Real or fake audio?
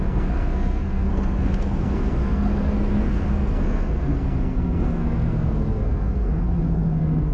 fake